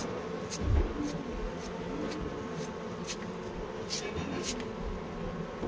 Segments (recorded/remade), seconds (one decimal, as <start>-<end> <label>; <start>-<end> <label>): 0.0-5.7 recorded